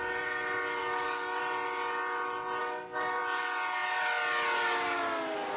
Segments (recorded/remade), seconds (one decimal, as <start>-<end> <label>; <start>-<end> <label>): 0.0-0.8 recorded; 0.8-1.4 remade; 1.4-2.6 recorded; 2.6-3.2 remade; 3.2-5.6 recorded